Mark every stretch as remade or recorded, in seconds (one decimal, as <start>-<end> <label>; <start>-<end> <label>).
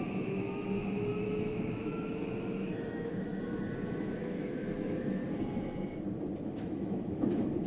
0.0-3.3 remade; 3.3-4.0 recorded; 4.0-5.2 remade; 5.2-6.4 recorded; 6.4-7.7 remade